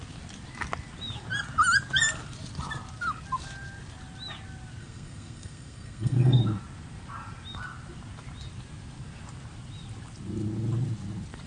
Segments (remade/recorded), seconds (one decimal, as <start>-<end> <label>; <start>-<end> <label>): 0.0-4.8 recorded; 4.8-6.4 remade; 6.4-11.5 recorded